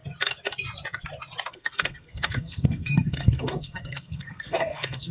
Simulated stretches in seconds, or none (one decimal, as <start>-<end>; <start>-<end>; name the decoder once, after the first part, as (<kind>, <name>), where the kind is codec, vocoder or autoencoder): 1.5-5.1 (codec, SNAC)